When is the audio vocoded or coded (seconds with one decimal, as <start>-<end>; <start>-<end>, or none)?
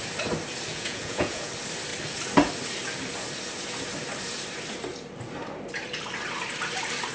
0.7-1.5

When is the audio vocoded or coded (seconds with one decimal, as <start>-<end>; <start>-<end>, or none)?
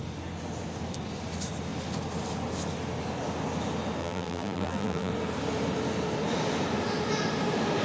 4.0-5.1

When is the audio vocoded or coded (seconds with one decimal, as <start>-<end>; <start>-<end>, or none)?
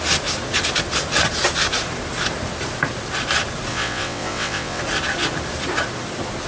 3.7-4.8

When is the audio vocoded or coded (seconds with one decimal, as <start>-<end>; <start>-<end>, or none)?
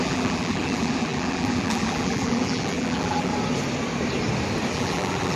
0.0-3.3; 4.7-5.3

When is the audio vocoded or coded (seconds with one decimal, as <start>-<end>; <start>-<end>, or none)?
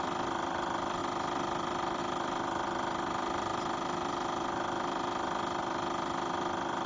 none